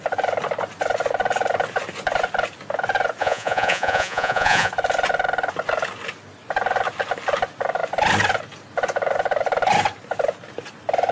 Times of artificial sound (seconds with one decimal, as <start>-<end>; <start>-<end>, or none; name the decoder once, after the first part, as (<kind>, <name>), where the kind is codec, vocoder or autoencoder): 3.2-4.7 (vocoder, Vocos)